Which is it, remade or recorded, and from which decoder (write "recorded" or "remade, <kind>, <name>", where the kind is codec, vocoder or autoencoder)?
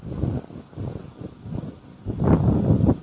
remade, vocoder, BigVGAN v2